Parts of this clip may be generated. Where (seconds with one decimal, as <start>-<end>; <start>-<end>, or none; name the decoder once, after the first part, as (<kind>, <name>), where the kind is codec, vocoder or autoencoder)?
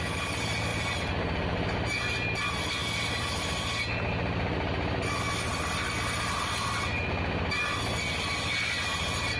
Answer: 0.7-2.0 (vocoder, BigVGAN v2)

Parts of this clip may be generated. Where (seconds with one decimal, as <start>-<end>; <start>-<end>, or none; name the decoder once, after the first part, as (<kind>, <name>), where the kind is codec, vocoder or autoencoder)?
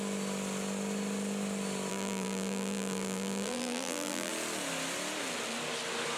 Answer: 1.9-4.3 (vocoder, BigVGAN v2)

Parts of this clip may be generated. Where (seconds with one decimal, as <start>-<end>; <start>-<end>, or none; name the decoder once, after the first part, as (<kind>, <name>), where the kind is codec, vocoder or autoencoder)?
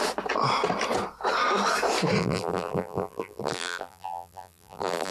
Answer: 2.2-5.1 (vocoder, BigVGAN v2)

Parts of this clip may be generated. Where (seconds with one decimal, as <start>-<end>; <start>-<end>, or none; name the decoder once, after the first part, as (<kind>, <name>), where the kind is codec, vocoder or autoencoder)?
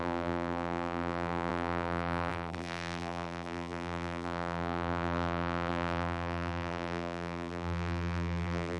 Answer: 0.0-8.8 (vocoder, BigVGAN v2)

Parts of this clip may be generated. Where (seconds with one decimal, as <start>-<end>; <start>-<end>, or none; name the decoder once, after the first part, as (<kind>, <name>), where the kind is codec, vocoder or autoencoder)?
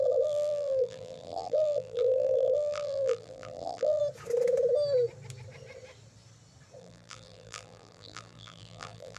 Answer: 0.0-4.0 (vocoder, BigVGAN v2); 6.8-9.2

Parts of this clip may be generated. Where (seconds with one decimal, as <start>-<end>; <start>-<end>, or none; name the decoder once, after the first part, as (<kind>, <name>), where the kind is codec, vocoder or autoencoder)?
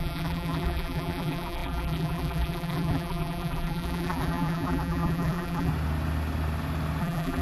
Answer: 0.0-5.7 (vocoder, BigVGAN v2); 7.0-7.4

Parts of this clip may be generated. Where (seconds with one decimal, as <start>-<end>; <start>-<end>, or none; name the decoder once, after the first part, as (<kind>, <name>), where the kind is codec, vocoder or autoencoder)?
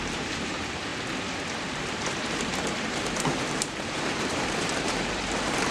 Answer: 0.0-0.9 (vocoder, BigVGAN v2); 1.7-5.7